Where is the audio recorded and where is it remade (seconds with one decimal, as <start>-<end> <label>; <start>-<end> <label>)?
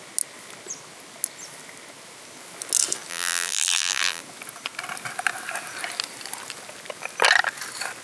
0.0-3.1 recorded; 3.1-4.2 remade; 4.2-8.0 recorded